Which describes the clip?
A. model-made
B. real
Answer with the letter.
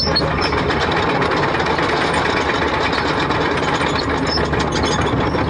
B